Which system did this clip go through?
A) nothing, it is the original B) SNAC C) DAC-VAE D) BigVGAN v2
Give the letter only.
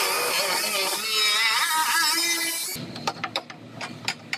A